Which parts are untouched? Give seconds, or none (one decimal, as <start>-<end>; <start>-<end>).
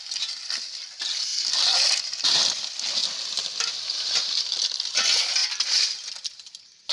0.0-3.0; 4.9-5.4; 6.1-6.9